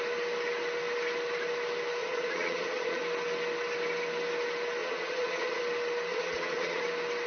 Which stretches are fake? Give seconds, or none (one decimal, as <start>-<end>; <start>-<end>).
2.0-3.0; 4.8-5.6; 6.1-6.8